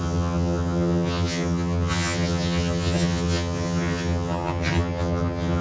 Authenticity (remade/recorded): remade